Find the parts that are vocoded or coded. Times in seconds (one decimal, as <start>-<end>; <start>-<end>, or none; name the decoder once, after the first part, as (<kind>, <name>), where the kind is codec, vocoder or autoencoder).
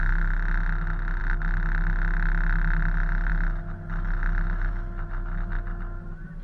none